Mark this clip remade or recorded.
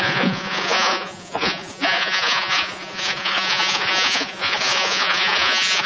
remade